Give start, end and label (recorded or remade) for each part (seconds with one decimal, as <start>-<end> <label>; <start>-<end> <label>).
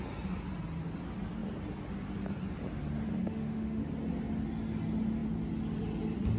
0.0-3.2 recorded; 3.2-3.9 remade; 3.9-6.4 recorded